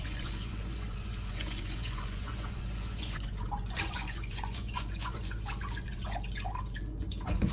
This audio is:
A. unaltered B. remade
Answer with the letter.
B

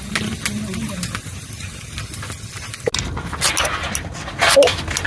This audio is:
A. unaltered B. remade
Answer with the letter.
A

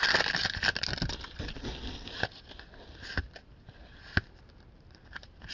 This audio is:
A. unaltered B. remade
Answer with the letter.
A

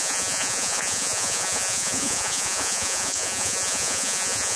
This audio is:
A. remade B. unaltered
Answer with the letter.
A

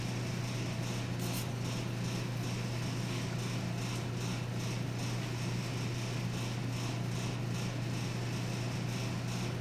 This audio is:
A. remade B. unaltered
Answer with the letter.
B